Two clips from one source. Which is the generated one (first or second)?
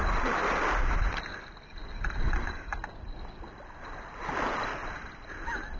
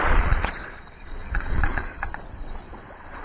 second